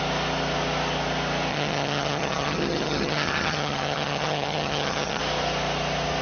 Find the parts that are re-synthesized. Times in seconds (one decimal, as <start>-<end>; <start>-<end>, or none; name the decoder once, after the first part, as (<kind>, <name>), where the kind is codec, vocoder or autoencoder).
1.5-5.2 (vocoder, HiFi-GAN)